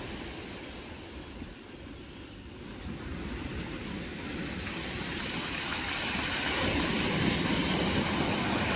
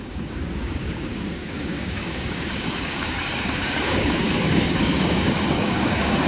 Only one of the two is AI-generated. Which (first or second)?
second